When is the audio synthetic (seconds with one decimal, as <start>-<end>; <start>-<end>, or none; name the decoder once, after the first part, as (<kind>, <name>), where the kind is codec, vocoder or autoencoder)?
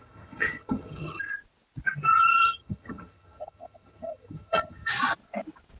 0.0-1.3 (vocoder, HiFi-GAN); 2.1-4.9